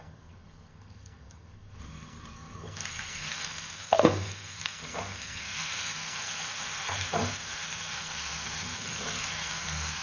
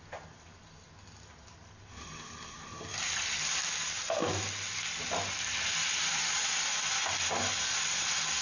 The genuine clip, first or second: second